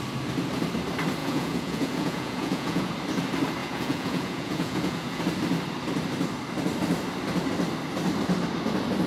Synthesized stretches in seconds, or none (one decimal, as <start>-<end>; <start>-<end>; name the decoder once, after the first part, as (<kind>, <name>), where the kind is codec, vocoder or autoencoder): 1.2-2.9 (vocoder, Vocos); 3.6-5.2